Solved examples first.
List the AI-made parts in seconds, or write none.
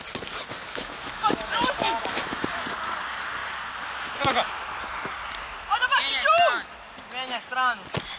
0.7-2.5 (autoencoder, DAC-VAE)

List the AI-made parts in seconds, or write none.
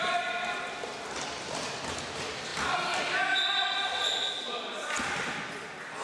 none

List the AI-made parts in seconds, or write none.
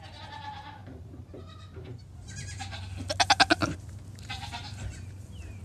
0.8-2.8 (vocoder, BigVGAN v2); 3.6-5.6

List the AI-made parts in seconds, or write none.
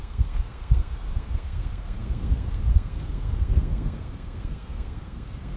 0.0-5.6 (codec, SNAC)